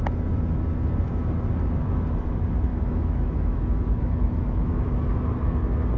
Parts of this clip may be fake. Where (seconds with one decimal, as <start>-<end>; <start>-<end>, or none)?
2.7-5.3